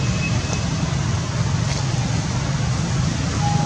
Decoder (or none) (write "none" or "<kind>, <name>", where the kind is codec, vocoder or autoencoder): none